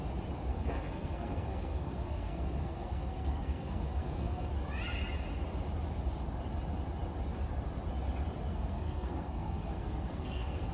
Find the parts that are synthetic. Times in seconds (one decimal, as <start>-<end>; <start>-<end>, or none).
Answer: 0.5-4.5; 8.5-10.7